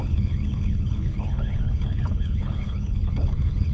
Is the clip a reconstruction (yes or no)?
yes